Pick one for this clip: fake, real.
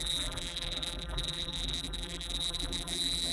fake